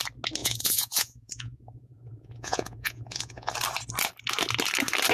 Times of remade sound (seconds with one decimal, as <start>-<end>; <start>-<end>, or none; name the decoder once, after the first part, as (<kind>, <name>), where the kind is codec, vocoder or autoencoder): 0.4-3.5 (vocoder, Vocos)